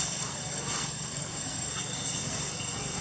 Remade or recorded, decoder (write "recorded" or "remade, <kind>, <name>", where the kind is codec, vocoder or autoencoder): remade, codec, SNAC